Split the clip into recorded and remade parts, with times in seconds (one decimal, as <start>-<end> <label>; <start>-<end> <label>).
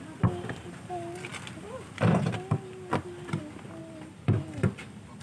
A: 0.0-3.8 recorded; 3.8-5.2 remade